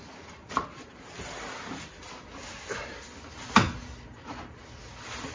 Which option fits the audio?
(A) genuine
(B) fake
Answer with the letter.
A